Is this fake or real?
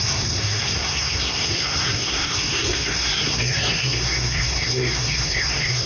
fake